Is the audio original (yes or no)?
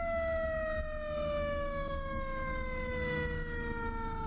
no